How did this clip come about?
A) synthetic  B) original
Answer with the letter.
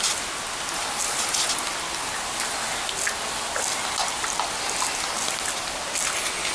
B